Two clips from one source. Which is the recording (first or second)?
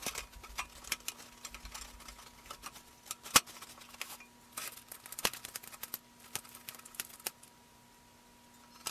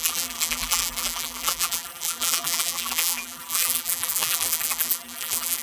first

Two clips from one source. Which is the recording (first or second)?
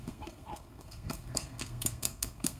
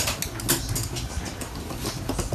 second